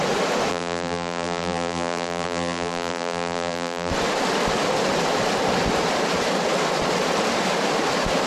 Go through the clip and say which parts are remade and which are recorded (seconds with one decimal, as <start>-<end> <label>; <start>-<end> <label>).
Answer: 0.0-0.5 recorded; 0.5-3.9 remade; 3.9-8.3 recorded